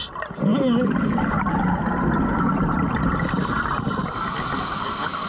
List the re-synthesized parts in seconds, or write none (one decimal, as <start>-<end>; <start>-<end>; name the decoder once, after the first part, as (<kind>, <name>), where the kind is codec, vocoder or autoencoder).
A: none